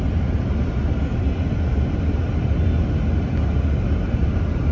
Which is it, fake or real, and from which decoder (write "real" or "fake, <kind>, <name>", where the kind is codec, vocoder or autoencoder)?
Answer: real